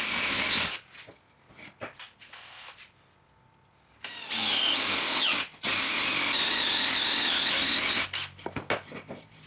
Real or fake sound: real